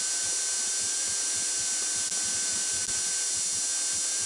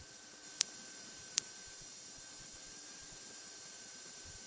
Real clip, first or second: first